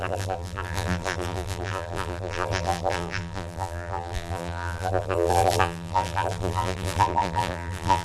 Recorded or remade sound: remade